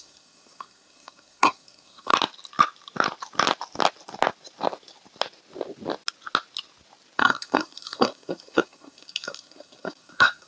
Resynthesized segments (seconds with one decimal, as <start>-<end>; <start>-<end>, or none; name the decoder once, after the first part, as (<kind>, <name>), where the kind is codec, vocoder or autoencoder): 0.0-2.1 (codec, SNAC); 7.2-10.5